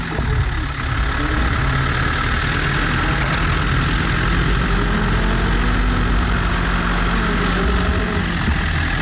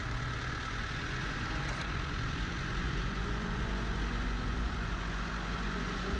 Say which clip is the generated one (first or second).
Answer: second